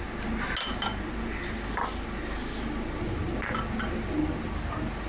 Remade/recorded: recorded